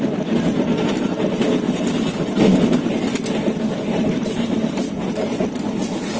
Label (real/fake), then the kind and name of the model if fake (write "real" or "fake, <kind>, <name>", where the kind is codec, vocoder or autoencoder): real